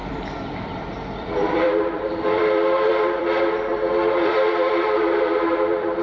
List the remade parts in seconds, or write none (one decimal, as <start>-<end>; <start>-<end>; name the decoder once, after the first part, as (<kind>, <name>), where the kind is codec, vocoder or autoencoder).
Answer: 0.0-6.0 (vocoder, BigVGAN v2)